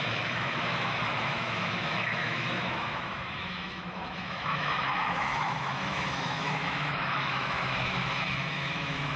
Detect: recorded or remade remade